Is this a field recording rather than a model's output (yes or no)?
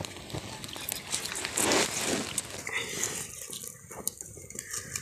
yes